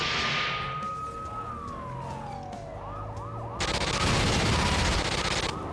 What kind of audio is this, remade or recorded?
recorded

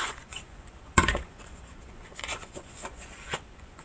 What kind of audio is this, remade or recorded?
remade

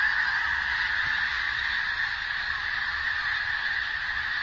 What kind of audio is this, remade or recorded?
recorded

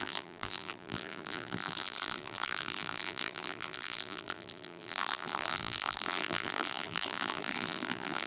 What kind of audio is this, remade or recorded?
remade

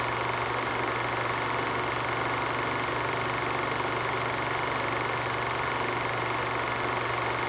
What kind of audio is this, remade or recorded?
recorded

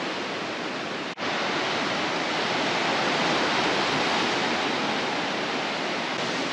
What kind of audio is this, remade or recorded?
recorded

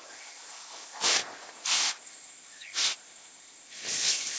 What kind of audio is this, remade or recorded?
remade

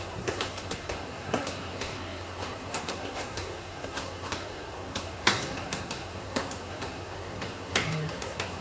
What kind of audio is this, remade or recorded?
remade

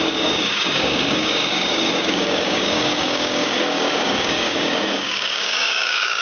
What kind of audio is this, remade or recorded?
remade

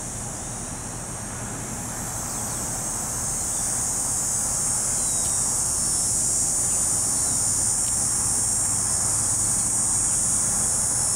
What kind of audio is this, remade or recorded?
recorded